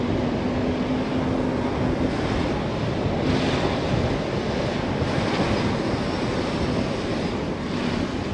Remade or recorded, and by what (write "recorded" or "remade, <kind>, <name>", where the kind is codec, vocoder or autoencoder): recorded